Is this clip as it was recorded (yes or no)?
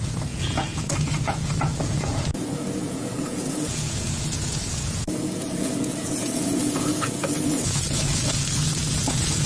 no